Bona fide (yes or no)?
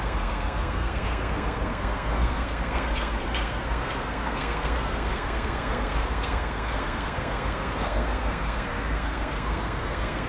no